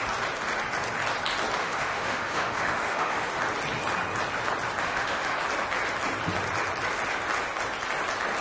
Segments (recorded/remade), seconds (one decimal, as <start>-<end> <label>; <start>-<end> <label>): 0.0-1.6 recorded; 1.6-3.3 remade; 3.3-4.8 recorded; 4.8-5.4 remade; 5.4-8.4 recorded

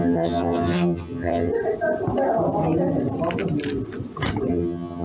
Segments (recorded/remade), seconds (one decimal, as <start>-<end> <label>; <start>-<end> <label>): 0.0-1.5 remade; 1.5-4.5 recorded; 4.5-5.0 remade

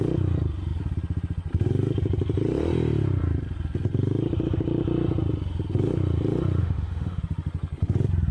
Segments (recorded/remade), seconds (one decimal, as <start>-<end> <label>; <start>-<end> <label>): 0.0-6.6 recorded; 6.6-7.2 remade; 7.2-8.3 recorded